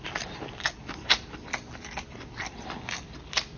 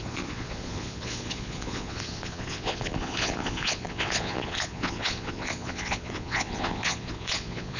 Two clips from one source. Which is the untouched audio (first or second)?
first